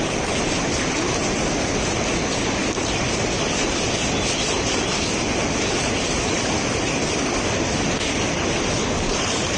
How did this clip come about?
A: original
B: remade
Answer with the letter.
A